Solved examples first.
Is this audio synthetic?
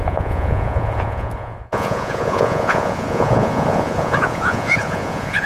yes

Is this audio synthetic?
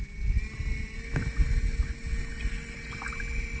no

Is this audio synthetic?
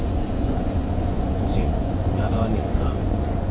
yes